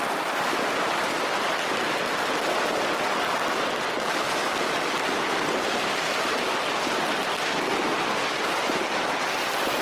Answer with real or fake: real